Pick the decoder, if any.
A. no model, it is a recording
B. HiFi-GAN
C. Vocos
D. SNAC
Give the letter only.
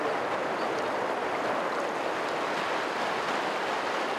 A